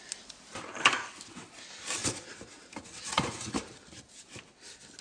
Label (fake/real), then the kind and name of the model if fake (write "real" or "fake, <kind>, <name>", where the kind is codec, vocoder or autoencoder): real